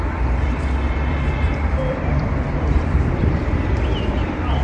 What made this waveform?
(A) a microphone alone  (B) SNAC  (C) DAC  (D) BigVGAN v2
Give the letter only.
D